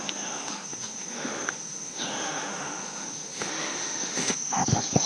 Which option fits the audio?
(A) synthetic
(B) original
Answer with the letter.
A